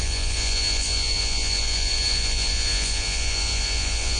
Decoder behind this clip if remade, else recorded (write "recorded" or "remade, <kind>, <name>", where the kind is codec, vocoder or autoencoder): remade, vocoder, Vocos